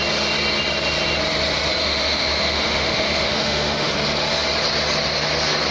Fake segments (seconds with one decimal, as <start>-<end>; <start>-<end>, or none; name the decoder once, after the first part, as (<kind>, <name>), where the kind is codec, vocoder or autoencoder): 1.8-3.9 (autoencoder, DAC-VAE)

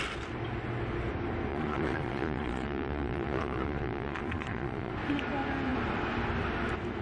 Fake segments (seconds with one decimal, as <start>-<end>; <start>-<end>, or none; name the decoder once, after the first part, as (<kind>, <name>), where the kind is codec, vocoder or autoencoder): 1.5-4.9 (vocoder, Vocos)

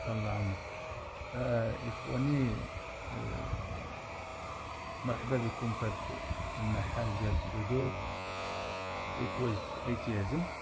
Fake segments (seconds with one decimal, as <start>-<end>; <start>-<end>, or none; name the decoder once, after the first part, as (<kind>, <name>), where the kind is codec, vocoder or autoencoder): 7.8-9.4 (vocoder, Vocos)

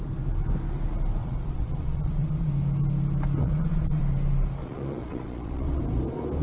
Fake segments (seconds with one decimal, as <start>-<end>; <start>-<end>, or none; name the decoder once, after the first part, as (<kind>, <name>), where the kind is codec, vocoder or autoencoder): 1.2-2.5 (vocoder, Vocos); 3.4-4.0; 4.6-5.8

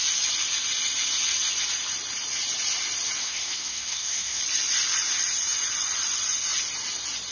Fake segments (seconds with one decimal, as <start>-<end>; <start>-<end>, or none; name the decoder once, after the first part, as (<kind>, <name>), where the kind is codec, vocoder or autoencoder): 3.2-4.4 (codec, SNAC)

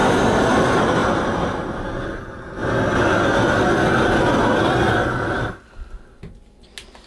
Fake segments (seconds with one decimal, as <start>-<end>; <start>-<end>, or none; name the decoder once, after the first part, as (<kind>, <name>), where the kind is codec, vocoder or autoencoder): 0.0-0.5 (vocoder, BigVGAN v2); 1.0-2.2

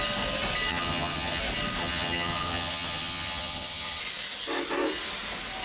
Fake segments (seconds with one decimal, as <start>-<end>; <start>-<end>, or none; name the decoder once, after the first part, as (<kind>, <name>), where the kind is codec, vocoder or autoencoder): 0.7-1.4 (vocoder, HiFi-GAN); 1.8-4.0

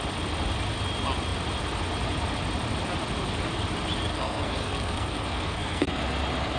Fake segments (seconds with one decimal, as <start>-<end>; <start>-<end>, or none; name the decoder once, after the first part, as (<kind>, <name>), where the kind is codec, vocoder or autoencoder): 4.1-6.0 (codec, SNAC)